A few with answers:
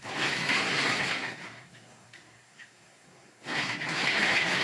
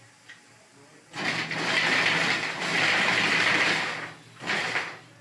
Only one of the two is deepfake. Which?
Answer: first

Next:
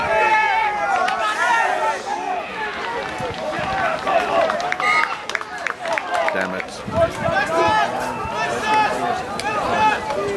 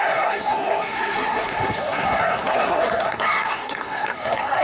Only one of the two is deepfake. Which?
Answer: second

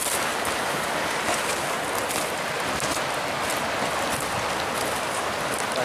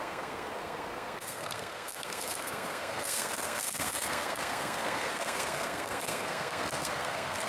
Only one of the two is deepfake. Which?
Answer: second